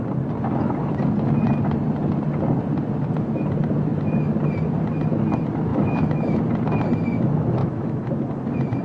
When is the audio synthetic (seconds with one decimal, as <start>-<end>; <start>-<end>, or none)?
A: 5.7-6.4; 7.6-8.1